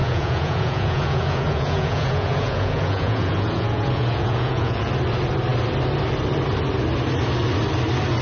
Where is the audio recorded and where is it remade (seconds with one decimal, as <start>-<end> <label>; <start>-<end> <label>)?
0.0-4.9 remade; 4.9-8.2 recorded